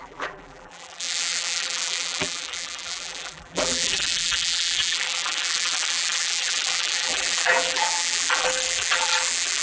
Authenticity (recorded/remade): remade